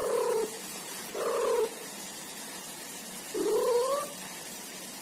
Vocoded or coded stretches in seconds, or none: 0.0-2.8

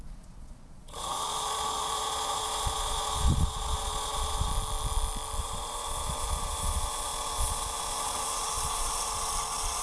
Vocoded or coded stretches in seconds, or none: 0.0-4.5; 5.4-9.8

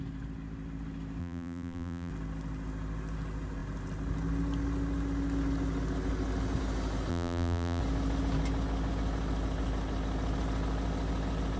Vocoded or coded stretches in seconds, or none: 1.2-2.1; 7.1-7.8

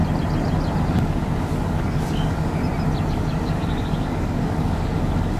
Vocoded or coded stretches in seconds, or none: 0.9-2.6; 3.1-5.4

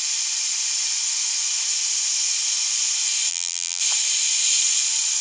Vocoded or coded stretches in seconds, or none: 3.3-3.8

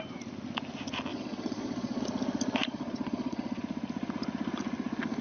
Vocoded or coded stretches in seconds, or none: 1.1-2.0; 2.7-3.6